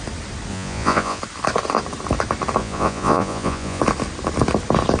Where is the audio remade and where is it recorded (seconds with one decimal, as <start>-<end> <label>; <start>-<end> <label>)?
0.0-0.5 recorded; 0.5-1.2 remade; 1.2-2.6 recorded; 2.6-3.8 remade; 3.8-5.0 recorded